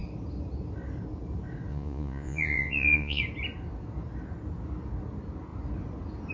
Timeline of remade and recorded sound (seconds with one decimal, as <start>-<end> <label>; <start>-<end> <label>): 0.0-1.7 recorded; 1.7-3.2 remade; 3.2-6.3 recorded